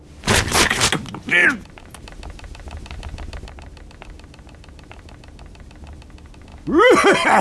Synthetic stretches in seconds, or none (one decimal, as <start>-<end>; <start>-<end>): 1.4-2.0